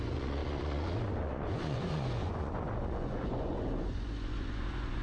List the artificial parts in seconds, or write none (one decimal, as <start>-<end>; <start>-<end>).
0.0-5.0